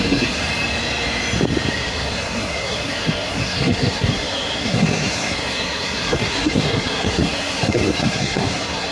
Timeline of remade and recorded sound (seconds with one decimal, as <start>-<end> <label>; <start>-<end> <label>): 0.0-0.4 remade; 0.4-1.7 recorded; 1.7-8.9 remade